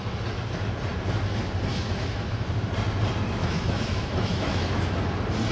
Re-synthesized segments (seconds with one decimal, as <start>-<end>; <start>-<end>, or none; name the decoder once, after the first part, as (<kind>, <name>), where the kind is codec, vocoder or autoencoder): 1.7-2.7 (autoencoder, DAC-VAE); 3.4-4.8